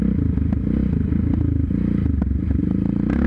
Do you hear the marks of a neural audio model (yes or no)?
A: no